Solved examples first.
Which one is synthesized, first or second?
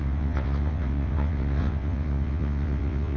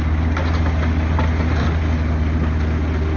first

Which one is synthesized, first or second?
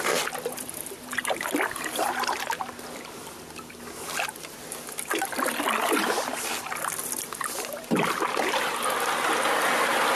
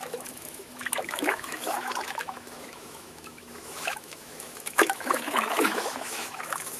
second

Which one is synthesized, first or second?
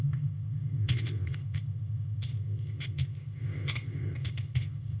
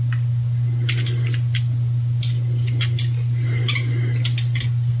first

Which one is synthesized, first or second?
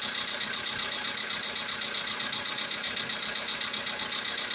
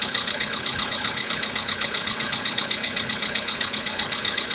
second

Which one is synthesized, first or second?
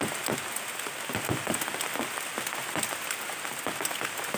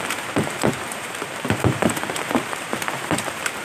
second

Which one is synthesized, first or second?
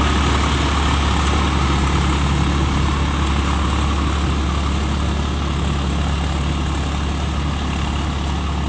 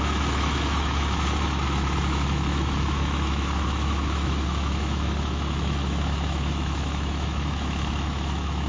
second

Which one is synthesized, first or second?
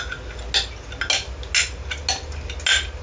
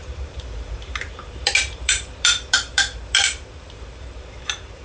second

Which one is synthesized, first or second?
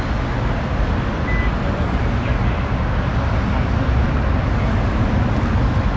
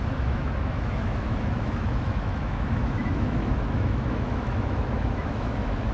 second